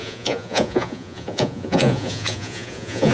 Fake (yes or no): yes